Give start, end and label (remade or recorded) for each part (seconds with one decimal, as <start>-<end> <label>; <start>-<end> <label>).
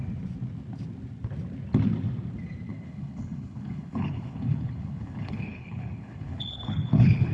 0.0-2.7 recorded; 2.7-7.3 remade